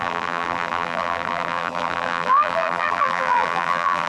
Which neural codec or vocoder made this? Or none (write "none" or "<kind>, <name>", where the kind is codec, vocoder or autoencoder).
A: vocoder, BigVGAN v2